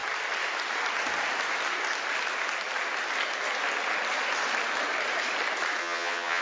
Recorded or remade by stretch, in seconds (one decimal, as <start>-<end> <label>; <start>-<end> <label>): 0.0-5.8 recorded; 5.8-6.4 remade